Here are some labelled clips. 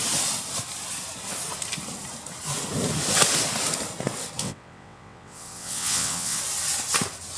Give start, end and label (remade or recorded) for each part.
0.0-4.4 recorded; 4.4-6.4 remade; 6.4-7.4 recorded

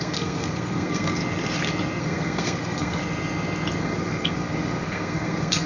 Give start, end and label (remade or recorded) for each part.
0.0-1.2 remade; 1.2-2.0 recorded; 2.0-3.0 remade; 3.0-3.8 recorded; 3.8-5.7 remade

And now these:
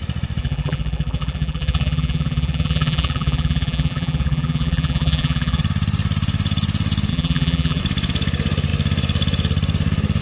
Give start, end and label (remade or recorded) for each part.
0.0-0.4 recorded; 0.4-5.6 remade; 5.6-7.1 recorded; 7.1-7.8 remade; 7.8-10.2 recorded

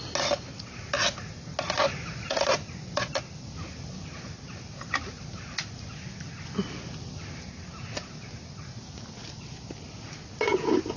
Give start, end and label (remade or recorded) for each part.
0.0-11.0 recorded

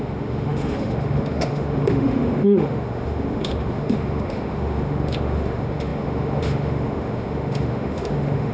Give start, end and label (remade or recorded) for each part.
0.0-8.5 remade

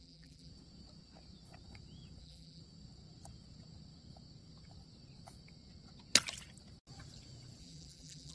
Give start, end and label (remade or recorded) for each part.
0.0-0.5 remade; 0.5-2.2 recorded; 2.2-2.6 remade; 2.6-7.6 recorded; 7.6-8.3 remade